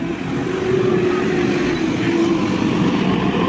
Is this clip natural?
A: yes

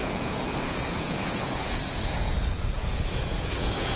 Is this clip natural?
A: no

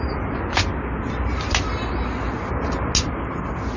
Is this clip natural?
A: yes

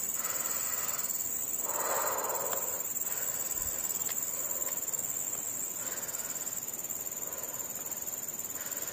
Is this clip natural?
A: yes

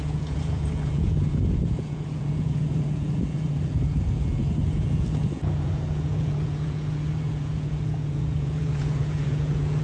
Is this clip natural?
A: no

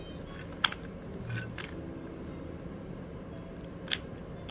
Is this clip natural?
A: yes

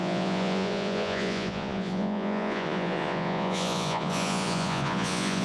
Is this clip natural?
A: no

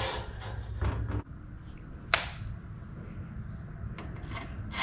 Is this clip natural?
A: yes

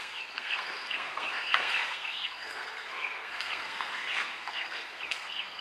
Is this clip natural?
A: no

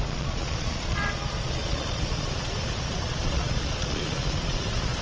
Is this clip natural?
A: no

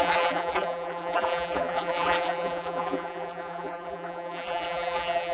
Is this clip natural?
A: no